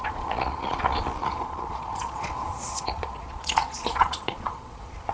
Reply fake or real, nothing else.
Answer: fake